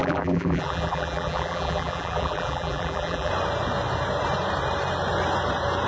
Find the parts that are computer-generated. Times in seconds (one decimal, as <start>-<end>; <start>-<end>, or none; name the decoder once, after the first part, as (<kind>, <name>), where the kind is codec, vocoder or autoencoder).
0.0-3.3 (vocoder, BigVGAN v2)